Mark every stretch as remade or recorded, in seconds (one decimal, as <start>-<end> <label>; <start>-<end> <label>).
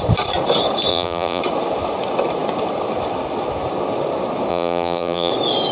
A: 0.0-0.9 recorded; 0.9-1.4 remade; 1.4-4.5 recorded; 4.5-5.3 remade; 5.3-5.7 recorded